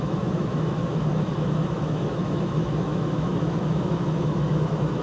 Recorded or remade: remade